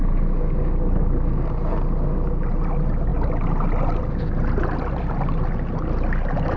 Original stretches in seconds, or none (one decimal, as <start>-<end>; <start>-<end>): 0.0-6.6